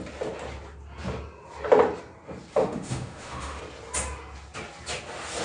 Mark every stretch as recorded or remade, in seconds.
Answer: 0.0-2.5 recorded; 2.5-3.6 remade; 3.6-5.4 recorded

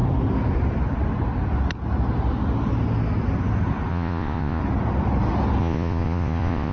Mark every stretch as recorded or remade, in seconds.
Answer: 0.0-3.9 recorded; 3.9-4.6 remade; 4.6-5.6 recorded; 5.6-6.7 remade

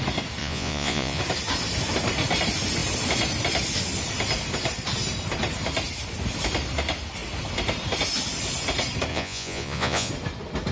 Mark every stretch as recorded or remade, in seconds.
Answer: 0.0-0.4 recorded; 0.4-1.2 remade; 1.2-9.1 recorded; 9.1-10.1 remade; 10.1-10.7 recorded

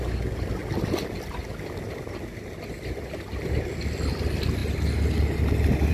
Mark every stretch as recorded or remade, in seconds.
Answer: 0.0-5.9 recorded

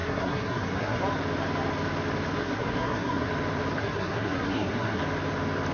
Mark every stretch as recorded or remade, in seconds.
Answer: 0.0-1.0 remade; 1.0-2.4 recorded; 2.4-3.3 remade; 3.3-3.8 recorded; 3.8-5.0 remade; 5.0-5.7 recorded